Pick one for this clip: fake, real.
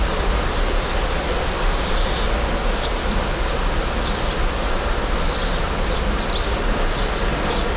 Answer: real